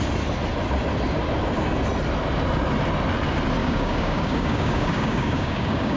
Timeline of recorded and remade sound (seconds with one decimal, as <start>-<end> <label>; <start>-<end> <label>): 0.0-3.6 recorded; 3.6-6.0 remade